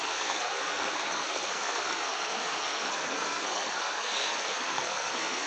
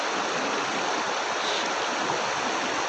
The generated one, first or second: first